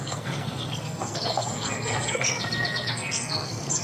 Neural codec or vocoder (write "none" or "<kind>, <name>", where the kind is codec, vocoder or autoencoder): codec, SNAC